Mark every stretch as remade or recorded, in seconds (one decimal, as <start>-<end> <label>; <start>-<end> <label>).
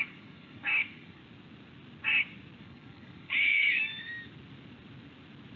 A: 0.0-1.2 remade; 1.2-2.6 recorded; 2.6-3.9 remade; 3.9-5.6 recorded